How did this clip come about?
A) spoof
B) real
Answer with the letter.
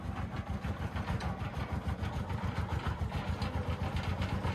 B